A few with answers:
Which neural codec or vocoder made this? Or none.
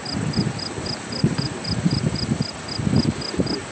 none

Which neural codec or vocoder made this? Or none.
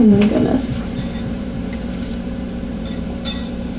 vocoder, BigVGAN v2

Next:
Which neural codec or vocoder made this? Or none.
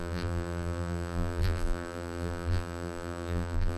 vocoder, BigVGAN v2